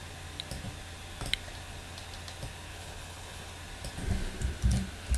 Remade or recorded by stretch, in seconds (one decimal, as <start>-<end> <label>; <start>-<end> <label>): 0.0-2.7 recorded; 2.7-3.5 remade; 3.5-5.2 recorded